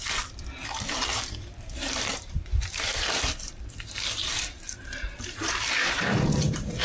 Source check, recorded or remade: remade